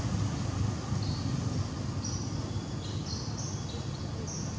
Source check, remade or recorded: recorded